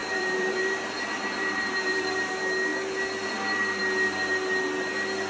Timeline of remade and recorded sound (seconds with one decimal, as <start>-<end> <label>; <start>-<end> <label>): 0.0-2.3 remade; 2.3-5.3 recorded